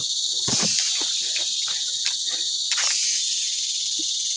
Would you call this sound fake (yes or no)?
no